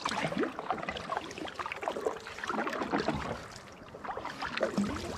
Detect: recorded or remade recorded